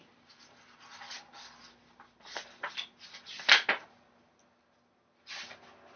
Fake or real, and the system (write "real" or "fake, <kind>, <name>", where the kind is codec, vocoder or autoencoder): real